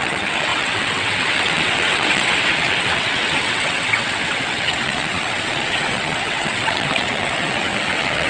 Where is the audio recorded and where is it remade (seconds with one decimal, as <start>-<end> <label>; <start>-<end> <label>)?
0.0-8.3 remade